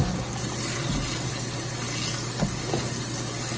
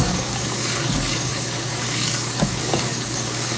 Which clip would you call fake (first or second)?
second